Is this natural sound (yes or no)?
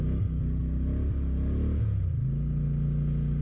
yes